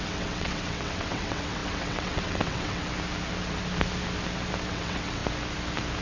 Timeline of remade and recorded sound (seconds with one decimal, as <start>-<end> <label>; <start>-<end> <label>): 0.0-2.8 remade; 2.8-4.7 recorded; 4.7-5.2 remade; 5.2-6.0 recorded